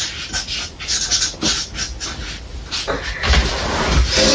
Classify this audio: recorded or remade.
recorded